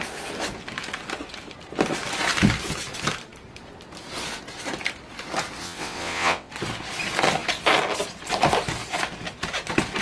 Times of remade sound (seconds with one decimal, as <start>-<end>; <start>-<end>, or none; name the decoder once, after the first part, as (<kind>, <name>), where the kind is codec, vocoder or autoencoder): 5.6-6.5 (vocoder, WaveNeXt)